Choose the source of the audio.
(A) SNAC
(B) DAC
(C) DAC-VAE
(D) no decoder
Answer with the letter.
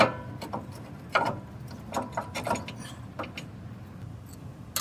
D